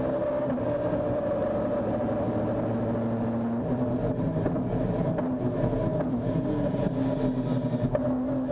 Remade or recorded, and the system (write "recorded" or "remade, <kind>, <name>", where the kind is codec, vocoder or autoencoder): recorded